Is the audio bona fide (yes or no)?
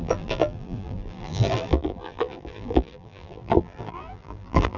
no